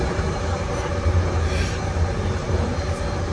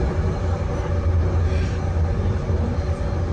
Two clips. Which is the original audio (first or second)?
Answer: second